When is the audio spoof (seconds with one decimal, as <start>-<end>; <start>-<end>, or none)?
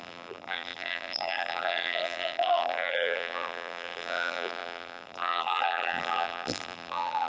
0.0-7.3